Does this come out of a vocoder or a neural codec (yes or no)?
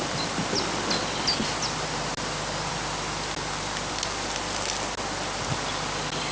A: no